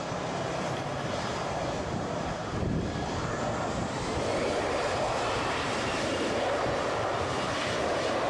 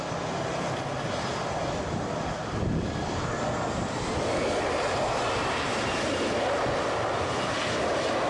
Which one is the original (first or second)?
second